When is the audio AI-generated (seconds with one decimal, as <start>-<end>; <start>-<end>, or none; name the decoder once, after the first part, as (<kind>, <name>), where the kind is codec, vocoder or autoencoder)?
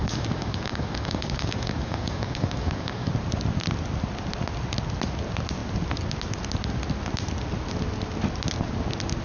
0.0-3.1 (codec, DAC)